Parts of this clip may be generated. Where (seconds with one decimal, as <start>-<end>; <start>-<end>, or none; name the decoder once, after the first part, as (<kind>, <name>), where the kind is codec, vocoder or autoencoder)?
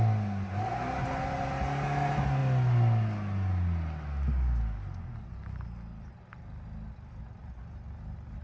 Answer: none